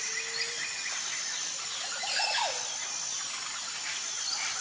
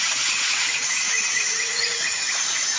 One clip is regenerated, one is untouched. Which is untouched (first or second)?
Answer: first